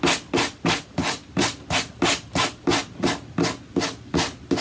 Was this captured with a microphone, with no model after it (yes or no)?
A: yes